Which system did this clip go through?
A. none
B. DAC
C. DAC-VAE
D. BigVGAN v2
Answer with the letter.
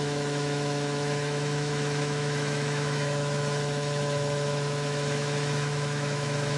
C